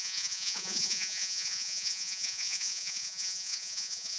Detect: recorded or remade remade